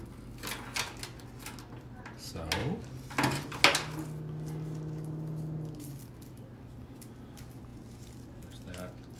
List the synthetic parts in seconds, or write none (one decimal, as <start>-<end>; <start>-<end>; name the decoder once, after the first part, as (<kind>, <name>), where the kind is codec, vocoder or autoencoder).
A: none